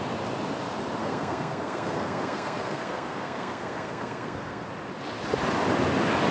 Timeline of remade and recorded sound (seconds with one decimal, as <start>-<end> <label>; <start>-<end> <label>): 0.0-1.0 recorded; 1.0-4.7 remade; 4.7-6.3 recorded

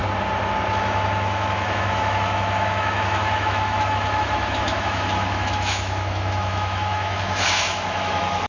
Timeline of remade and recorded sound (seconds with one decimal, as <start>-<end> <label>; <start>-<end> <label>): 0.0-0.7 recorded; 0.7-8.5 remade

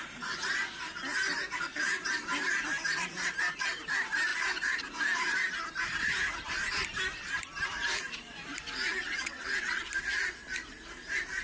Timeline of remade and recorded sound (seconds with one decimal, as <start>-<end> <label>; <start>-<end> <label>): 0.0-9.0 recorded; 9.0-9.8 remade; 9.8-11.4 recorded